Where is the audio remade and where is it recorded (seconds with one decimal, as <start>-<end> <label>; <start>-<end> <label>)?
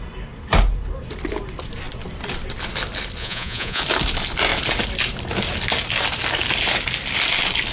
0.0-3.2 recorded; 3.2-3.8 remade; 3.8-7.7 recorded